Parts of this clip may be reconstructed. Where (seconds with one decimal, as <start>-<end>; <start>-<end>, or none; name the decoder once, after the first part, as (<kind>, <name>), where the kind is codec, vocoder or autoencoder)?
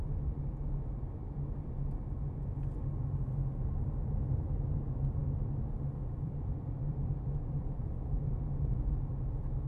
5.2-8.2 (vocoder, BigVGAN v2)